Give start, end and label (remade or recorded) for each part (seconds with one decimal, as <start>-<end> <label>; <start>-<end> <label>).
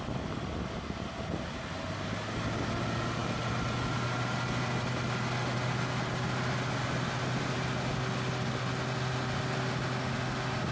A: 0.0-10.7 recorded